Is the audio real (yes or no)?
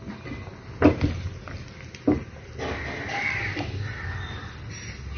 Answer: yes